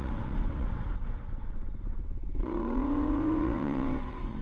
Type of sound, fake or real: fake